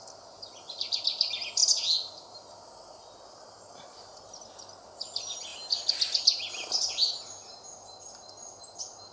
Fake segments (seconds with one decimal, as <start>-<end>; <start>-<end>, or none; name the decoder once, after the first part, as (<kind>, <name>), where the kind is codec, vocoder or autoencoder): none